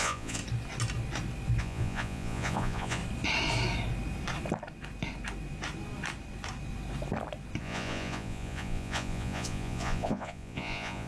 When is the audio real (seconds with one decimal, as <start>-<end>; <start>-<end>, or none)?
0.4-1.6; 3.0-7.6